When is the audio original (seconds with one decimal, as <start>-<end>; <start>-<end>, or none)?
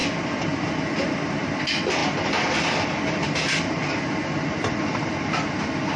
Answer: 0.0-6.0